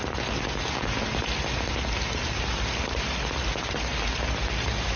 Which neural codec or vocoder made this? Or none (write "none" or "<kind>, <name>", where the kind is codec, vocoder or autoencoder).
none